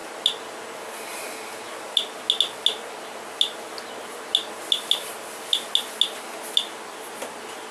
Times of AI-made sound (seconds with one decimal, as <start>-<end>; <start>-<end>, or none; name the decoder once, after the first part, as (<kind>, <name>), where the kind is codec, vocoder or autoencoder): none